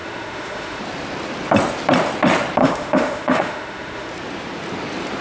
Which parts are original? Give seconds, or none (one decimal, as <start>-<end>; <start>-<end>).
0.8-2.6; 4.1-5.2